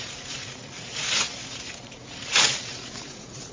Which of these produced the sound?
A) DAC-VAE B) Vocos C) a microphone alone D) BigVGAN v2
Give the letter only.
B